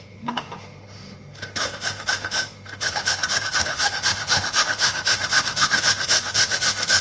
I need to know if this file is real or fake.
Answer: fake